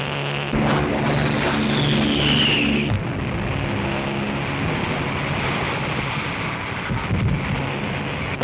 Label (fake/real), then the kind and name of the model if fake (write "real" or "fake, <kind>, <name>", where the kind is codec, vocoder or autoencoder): real